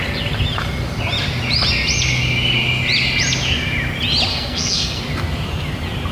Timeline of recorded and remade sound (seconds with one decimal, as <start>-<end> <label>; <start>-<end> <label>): 0.0-4.3 recorded; 4.3-5.0 remade; 5.0-6.1 recorded